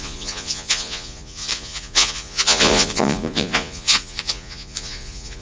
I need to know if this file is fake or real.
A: fake